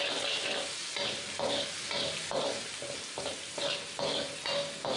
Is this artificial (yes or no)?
no